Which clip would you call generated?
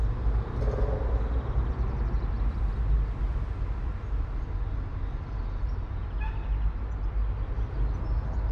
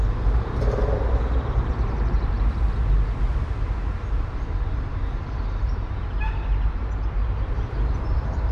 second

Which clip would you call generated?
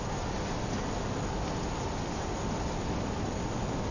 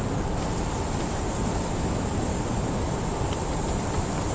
second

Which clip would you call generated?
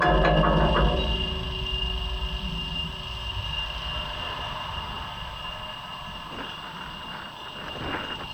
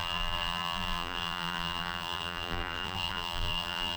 second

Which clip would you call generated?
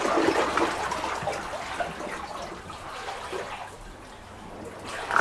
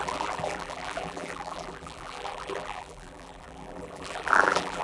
second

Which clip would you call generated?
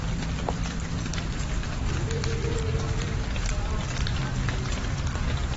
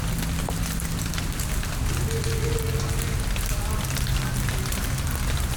first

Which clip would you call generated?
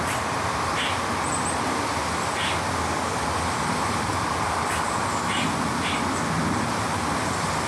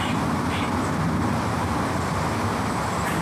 second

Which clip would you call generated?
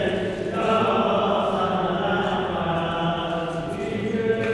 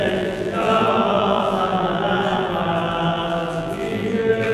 second